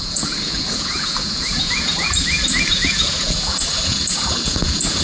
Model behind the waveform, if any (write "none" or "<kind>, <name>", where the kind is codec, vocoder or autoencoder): vocoder, Vocos